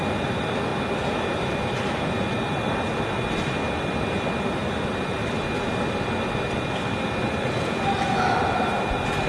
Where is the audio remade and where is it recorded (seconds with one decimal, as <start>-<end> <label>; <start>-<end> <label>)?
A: 0.0-9.3 recorded